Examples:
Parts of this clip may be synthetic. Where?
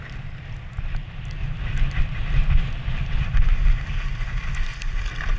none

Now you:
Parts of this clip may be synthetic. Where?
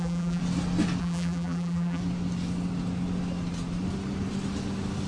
0.0-0.4 (vocoder, BigVGAN v2); 1.0-2.0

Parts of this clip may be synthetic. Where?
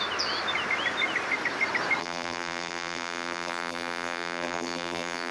2.0-5.3 (vocoder, BigVGAN v2)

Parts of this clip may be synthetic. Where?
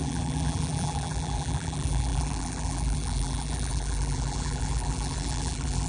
0.0-5.9 (vocoder, BigVGAN v2)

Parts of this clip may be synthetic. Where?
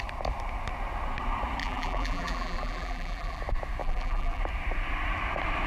1.6-3.4 (vocoder, BigVGAN v2); 3.8-4.4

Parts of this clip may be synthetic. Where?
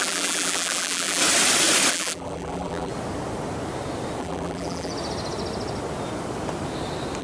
0.0-1.2 (vocoder, BigVGAN v2); 1.9-2.9; 4.2-4.9